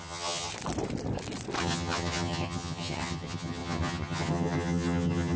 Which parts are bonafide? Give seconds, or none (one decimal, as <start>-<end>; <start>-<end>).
0.5-1.6